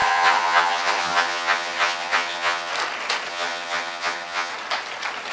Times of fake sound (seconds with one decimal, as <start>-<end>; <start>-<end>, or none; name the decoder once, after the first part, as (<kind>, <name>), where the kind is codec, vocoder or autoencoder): 0.0-2.7 (vocoder, HiFi-GAN); 3.3-4.5